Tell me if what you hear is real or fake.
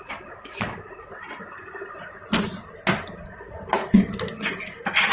real